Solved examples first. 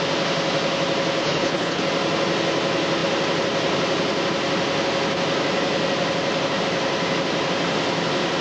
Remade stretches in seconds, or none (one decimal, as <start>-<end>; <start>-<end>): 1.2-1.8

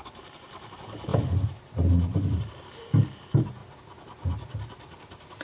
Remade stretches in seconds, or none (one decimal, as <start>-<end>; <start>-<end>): 0.0-3.6

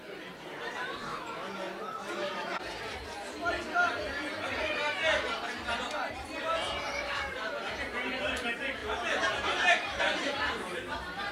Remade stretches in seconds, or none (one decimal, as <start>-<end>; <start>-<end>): 0.0-1.1; 6.1-11.3

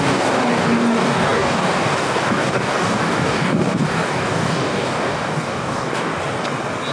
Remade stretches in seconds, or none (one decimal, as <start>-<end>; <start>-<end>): 0.0-6.1

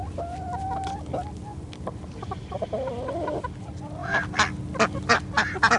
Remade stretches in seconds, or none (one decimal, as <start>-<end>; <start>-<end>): none

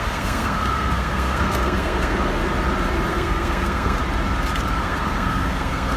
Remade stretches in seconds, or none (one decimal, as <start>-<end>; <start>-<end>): 0.0-2.4; 3.1-4.0; 4.7-6.0

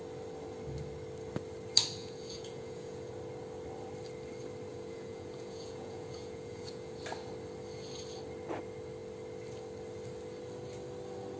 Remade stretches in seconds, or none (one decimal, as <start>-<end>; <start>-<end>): 2.0-3.1; 4.7-7.0

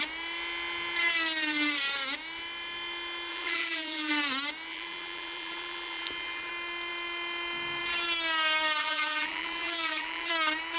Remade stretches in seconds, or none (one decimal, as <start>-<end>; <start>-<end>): 3.3-4.1; 4.7-6.5; 8.8-10.3